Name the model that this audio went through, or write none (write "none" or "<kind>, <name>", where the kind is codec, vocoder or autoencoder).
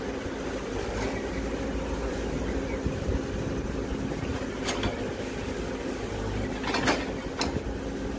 none